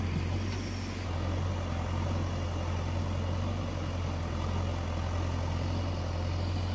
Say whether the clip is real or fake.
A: real